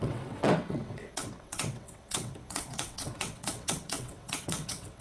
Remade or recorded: remade